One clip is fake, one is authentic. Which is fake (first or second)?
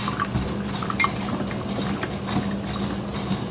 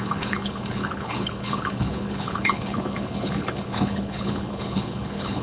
second